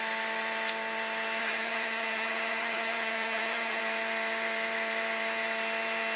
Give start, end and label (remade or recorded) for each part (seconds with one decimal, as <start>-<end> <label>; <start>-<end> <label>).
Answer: 0.0-1.4 recorded; 1.4-3.8 remade; 3.8-6.2 recorded